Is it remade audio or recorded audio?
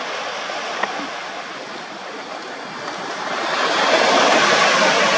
recorded